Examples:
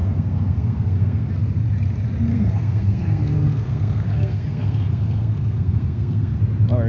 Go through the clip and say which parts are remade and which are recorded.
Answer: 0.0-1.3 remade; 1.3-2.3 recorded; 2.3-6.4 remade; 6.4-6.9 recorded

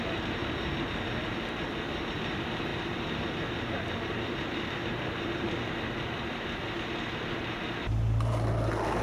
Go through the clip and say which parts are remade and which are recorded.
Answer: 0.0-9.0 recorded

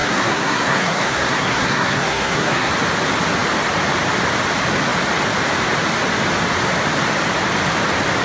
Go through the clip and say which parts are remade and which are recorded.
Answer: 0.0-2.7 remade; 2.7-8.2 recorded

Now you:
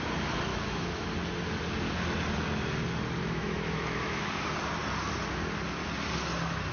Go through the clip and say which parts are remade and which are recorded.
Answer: 0.0-0.5 recorded; 0.5-1.1 remade; 1.1-3.2 recorded; 3.2-4.3 remade; 4.3-6.7 recorded

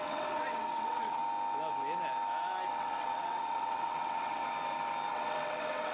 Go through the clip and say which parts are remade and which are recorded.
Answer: 0.0-1.2 remade; 1.2-2.7 recorded; 2.7-4.4 remade; 4.4-5.1 recorded; 5.1-5.9 remade